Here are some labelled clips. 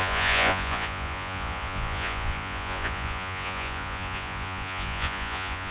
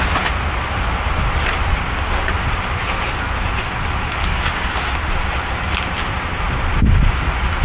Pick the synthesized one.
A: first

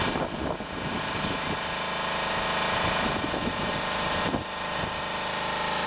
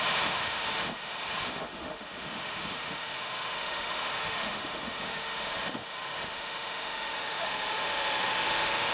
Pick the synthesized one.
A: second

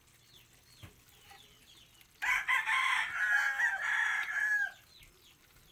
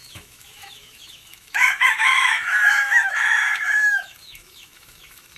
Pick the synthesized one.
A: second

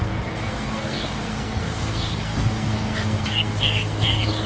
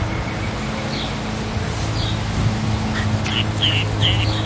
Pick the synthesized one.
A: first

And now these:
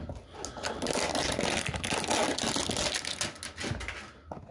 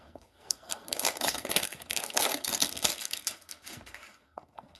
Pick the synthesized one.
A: second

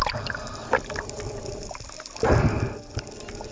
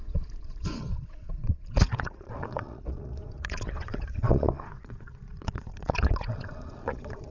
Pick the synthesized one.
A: second